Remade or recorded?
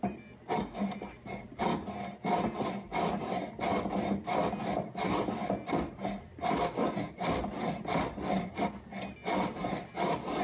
recorded